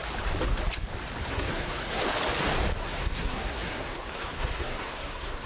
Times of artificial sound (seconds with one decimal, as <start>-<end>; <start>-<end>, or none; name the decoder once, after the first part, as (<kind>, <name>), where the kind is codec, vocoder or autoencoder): 1.3-2.0 (codec, SNAC); 2.8-5.5